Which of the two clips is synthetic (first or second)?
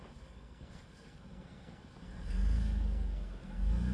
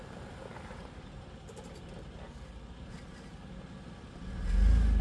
first